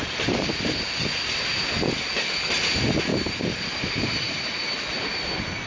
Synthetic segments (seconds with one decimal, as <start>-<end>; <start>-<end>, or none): 0.0-1.0; 3.1-4.3